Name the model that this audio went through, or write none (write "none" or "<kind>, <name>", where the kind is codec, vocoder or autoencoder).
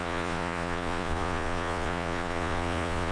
vocoder, Vocos